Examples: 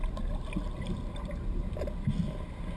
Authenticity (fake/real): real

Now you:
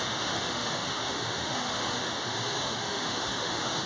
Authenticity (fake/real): fake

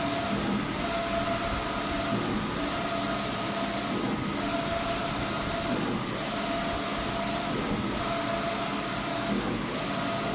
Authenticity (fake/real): real